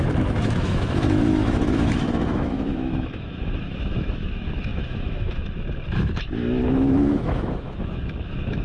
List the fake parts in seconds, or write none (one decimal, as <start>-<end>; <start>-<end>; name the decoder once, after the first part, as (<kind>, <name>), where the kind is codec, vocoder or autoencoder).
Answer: 0.0-8.6 (autoencoder, DAC-VAE)